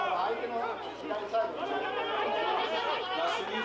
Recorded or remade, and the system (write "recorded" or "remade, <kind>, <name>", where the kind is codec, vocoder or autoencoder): recorded